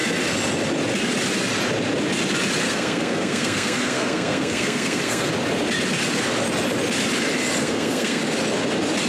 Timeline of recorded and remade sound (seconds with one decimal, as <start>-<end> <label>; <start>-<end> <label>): 0.0-2.6 recorded; 2.6-5.3 remade; 5.3-7.6 recorded; 7.6-8.2 remade; 8.2-9.1 recorded